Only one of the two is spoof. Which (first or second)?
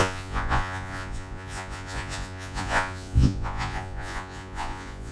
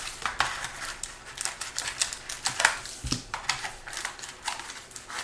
first